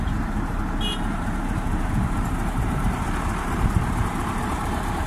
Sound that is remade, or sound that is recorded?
remade